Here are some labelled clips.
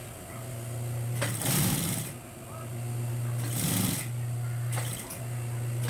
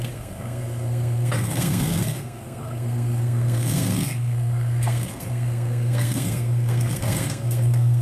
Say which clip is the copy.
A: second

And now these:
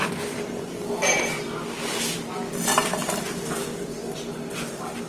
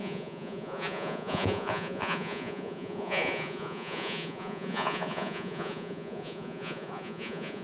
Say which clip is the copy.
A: second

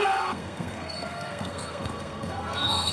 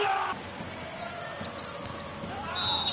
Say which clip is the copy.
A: first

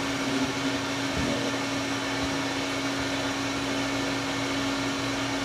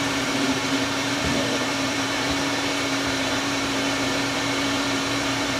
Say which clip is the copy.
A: second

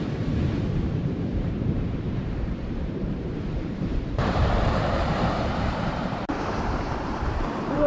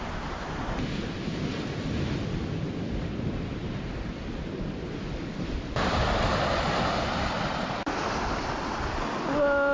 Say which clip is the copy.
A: first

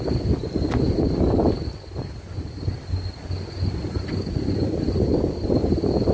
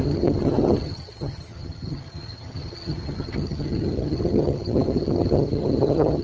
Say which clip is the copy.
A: second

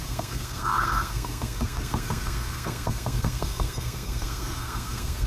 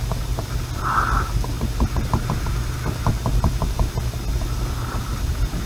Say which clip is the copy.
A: first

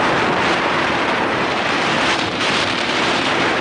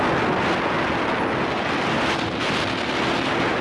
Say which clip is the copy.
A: first